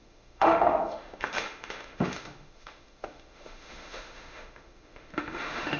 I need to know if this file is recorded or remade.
remade